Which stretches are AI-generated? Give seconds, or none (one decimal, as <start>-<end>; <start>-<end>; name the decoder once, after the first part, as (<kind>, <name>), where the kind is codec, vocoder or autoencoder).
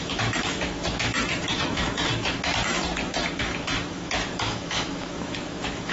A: 0.0-5.9 (autoencoder, DAC-VAE)